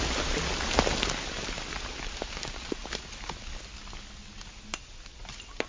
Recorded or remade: recorded